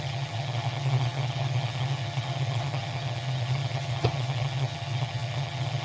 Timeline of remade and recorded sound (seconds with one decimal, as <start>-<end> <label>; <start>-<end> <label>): 0.0-5.8 remade